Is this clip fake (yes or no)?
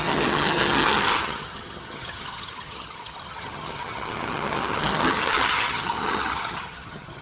yes